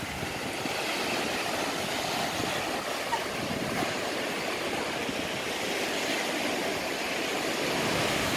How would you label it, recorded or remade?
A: recorded